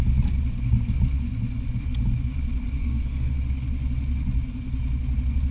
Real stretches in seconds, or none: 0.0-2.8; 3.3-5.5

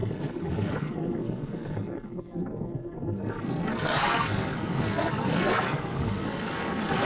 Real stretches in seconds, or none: none